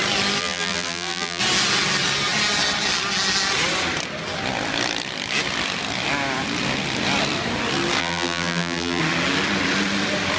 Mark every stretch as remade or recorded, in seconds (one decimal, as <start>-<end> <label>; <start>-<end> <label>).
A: 0.0-0.4 recorded; 0.4-1.4 remade; 1.4-8.0 recorded; 8.0-9.0 remade; 9.0-10.4 recorded